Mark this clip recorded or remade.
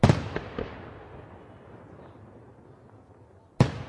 recorded